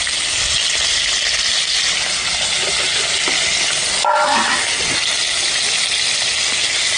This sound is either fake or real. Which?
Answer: real